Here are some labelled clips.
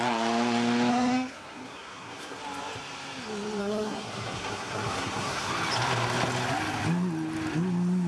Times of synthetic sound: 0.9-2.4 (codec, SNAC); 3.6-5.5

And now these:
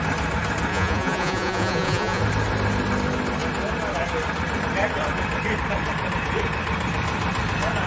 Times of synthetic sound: 0.7-2.2 (vocoder, Vocos)

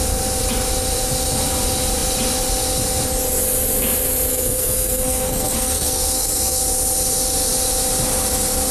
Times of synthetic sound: 4.3-6.6 (codec, SNAC)